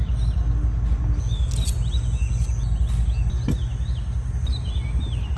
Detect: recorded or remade recorded